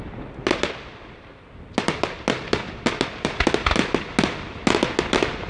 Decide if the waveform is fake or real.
real